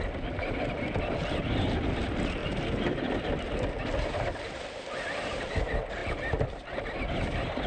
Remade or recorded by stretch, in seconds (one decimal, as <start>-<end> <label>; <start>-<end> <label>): 0.0-7.7 recorded